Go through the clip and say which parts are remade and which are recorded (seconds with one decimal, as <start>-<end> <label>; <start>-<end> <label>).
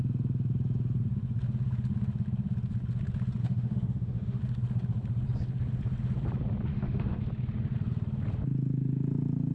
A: 0.0-3.4 recorded; 3.4-4.4 remade; 4.4-6.7 recorded; 6.7-7.2 remade; 7.2-9.5 recorded